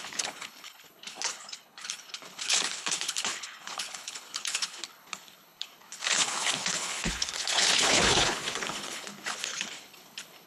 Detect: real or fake fake